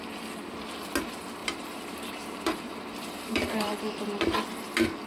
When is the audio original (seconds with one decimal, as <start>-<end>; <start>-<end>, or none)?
0.0-1.4; 3.8-5.1